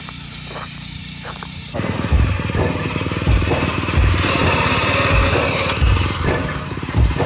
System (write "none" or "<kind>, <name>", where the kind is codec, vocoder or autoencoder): vocoder, BigVGAN v2